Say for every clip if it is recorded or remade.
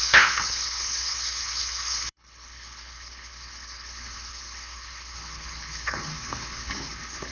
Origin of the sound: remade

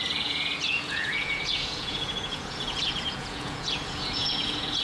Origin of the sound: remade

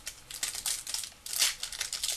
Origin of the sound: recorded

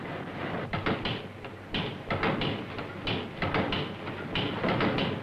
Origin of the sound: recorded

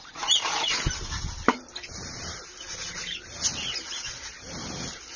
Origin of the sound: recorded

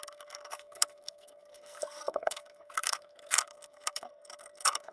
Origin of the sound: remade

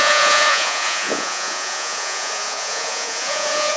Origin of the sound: remade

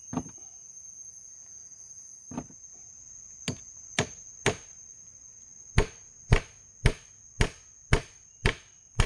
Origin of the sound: recorded